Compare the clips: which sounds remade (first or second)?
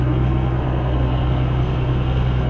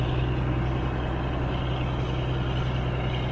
first